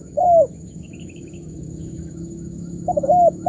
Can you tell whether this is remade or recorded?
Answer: remade